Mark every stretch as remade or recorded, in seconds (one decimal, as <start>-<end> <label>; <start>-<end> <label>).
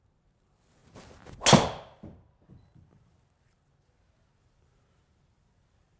0.0-0.8 remade; 0.8-4.4 recorded; 4.4-6.0 remade